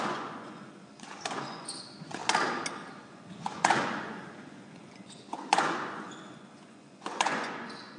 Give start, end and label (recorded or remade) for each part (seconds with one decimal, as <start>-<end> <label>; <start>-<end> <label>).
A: 0.0-2.2 remade; 2.2-2.9 recorded; 2.9-8.0 remade